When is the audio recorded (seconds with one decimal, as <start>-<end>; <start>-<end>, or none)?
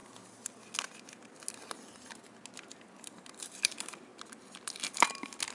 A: 0.0-3.3; 4.1-5.5